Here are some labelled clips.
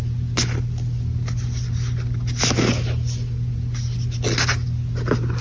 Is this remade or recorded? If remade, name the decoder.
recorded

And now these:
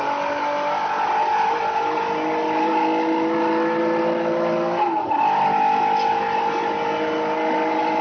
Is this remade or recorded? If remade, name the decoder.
recorded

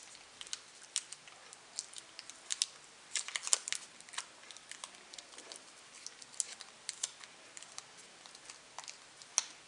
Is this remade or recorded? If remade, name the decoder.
recorded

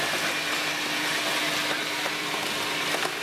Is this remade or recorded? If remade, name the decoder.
recorded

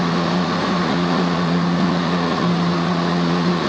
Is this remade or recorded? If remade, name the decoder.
remade, vocoder, Vocos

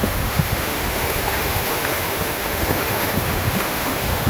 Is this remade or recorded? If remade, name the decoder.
remade, autoencoder, DAC-VAE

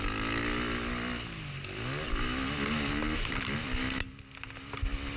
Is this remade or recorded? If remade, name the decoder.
recorded